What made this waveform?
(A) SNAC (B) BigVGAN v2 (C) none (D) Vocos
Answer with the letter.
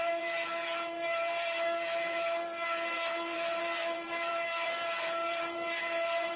B